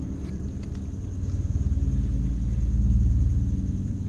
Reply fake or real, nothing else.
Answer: real